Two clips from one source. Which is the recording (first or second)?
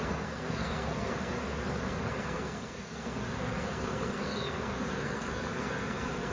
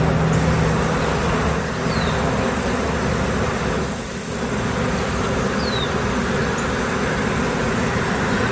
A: second